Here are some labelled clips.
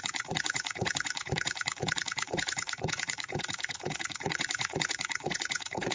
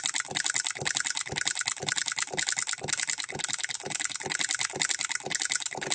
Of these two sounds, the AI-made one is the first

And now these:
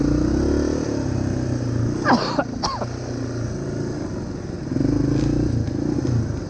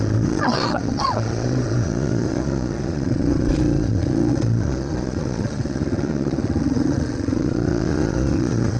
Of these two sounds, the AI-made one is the second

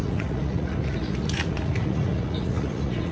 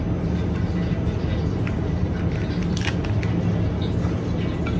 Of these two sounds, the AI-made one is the first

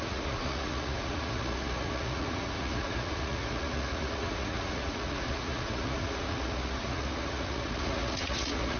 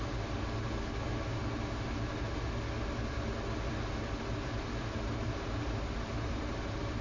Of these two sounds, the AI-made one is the first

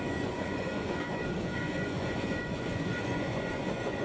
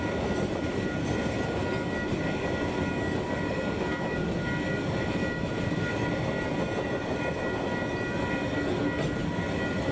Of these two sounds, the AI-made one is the first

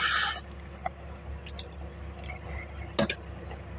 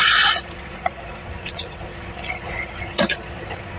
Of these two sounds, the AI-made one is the second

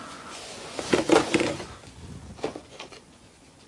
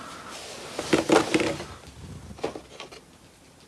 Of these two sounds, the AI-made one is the first